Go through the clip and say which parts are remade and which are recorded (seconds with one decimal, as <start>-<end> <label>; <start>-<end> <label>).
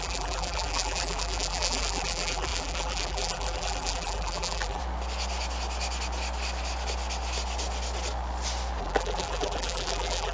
0.0-4.8 remade; 4.8-8.8 recorded; 8.8-10.3 remade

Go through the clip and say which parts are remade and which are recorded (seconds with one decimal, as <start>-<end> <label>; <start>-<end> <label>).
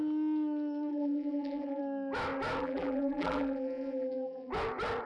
0.0-0.9 recorded; 0.9-1.8 remade; 1.8-2.6 recorded; 2.6-4.5 remade; 4.5-5.1 recorded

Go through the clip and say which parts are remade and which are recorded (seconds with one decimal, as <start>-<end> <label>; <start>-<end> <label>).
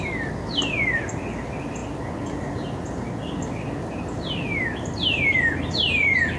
0.0-6.4 recorded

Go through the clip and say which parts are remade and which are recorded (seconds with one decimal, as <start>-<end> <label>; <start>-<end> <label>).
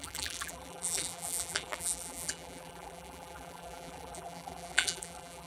0.0-5.5 remade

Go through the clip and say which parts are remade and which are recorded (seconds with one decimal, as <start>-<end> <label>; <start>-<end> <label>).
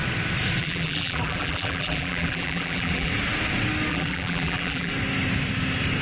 0.0-0.6 recorded; 0.6-3.1 remade; 3.1-3.9 recorded; 3.9-4.9 remade; 4.9-6.0 recorded